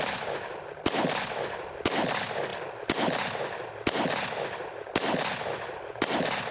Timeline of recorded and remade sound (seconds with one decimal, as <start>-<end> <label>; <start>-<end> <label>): 0.0-6.5 recorded